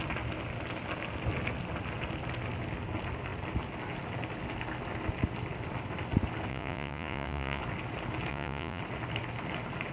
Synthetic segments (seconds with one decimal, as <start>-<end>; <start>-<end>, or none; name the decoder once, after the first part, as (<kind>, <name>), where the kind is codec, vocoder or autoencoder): 6.5-7.6 (vocoder, Vocos); 8.3-8.8